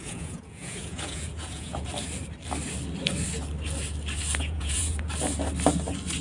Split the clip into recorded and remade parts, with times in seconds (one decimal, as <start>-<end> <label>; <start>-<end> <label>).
0.0-1.9 remade; 1.9-4.4 recorded; 4.4-5.1 remade; 5.1-6.2 recorded

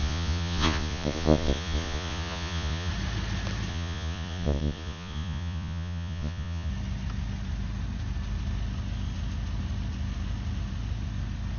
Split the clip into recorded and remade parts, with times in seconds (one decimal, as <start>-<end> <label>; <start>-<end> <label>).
0.0-2.9 remade; 2.9-3.7 recorded; 3.7-6.7 remade; 6.7-11.6 recorded

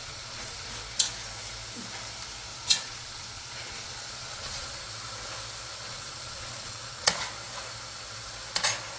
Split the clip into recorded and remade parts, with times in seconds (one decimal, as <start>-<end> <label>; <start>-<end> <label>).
0.0-0.7 remade; 0.7-2.5 recorded; 2.5-4.8 remade; 4.8-5.9 recorded; 5.9-7.2 remade; 7.2-9.0 recorded

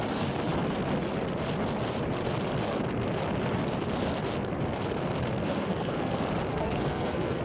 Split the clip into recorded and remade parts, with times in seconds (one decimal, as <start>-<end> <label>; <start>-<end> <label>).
0.0-5.4 recorded; 5.4-6.1 remade; 6.1-6.5 recorded; 6.5-7.4 remade

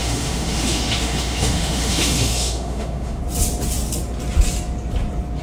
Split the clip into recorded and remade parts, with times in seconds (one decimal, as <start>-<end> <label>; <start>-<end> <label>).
0.0-3.2 remade; 3.2-5.4 recorded